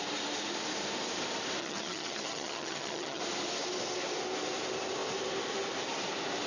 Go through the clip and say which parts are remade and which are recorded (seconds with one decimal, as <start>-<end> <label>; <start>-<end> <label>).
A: 0.0-1.6 recorded; 1.6-3.2 remade; 3.2-6.5 recorded